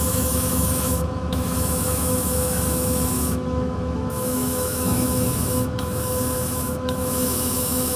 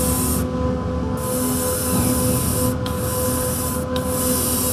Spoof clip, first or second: first